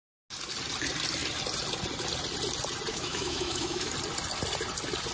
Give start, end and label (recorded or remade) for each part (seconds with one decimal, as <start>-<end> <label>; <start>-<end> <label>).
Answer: 0.0-2.9 recorded; 2.9-3.9 remade; 3.9-5.1 recorded